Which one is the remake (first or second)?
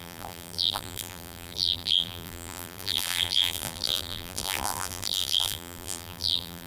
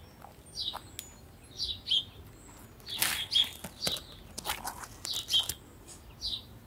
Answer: first